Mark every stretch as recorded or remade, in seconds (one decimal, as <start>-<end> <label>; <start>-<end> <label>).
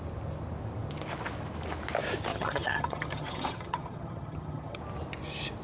0.0-2.3 recorded; 2.3-4.8 remade; 4.8-5.6 recorded